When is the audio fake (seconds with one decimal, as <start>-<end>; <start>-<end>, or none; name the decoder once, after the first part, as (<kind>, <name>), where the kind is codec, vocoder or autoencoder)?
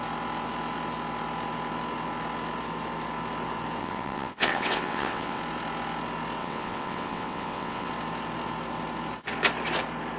3.8-5.4 (vocoder, WaveNeXt); 6.4-7.9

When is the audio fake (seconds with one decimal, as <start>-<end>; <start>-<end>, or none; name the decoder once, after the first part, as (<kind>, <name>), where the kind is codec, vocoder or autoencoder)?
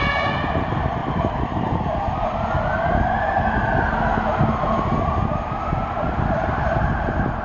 none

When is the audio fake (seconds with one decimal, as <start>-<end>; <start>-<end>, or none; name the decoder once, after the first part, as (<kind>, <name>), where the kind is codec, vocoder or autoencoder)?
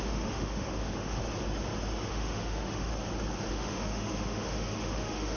0.0-1.2 (autoencoder, DAC-VAE); 2.1-2.9; 3.5-5.4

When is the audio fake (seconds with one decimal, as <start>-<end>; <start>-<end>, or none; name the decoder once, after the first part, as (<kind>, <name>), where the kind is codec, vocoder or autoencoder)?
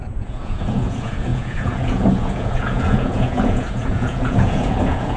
0.0-5.2 (vocoder, Vocos)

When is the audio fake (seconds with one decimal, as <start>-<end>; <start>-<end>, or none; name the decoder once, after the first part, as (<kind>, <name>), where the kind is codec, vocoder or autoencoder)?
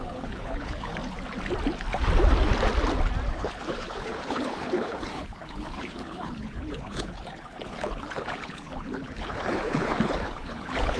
0.0-1.0 (codec, HILCodec); 3.3-11.0